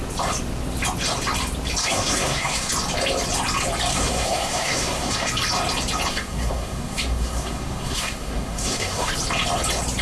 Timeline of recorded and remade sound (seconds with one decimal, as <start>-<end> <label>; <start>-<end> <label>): 0.0-1.8 recorded; 1.8-2.7 remade; 2.7-3.9 recorded; 3.9-5.3 remade; 5.3-6.1 recorded; 6.1-9.1 remade; 9.1-10.0 recorded

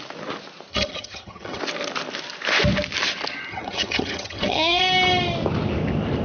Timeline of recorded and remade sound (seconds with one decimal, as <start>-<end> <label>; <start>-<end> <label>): 0.0-0.7 recorded; 0.7-1.6 remade; 1.6-3.5 recorded; 3.5-4.8 remade; 4.8-6.2 recorded

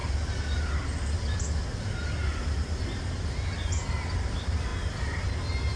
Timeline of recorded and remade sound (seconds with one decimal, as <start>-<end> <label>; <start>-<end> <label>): 0.0-5.8 recorded

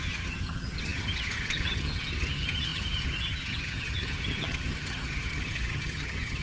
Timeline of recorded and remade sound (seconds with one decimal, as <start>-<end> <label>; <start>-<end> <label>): 0.0-6.4 remade

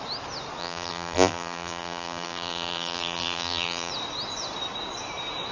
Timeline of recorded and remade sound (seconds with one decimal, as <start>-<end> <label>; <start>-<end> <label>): 0.0-0.6 recorded; 0.6-3.9 remade; 3.9-5.5 recorded

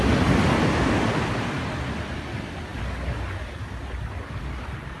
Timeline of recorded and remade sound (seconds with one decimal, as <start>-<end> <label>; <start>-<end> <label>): 0.0-5.0 recorded

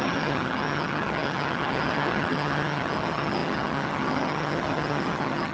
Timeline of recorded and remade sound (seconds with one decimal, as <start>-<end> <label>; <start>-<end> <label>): 0.0-5.5 remade